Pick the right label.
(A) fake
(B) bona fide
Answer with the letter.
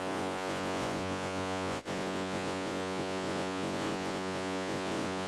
A